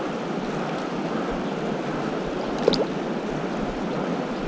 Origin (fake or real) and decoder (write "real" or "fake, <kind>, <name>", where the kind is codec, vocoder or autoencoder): real